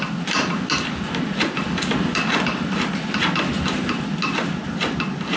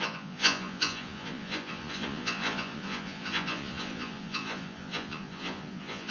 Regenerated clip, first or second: second